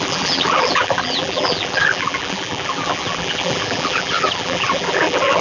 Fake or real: fake